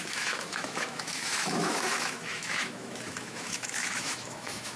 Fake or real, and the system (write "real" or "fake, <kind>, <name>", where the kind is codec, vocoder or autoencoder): fake, autoencoder, DAC-VAE